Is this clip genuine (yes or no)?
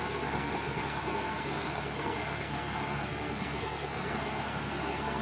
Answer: no